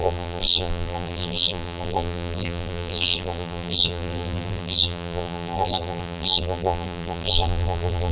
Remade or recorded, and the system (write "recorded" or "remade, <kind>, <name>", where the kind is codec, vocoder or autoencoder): remade, vocoder, BigVGAN v2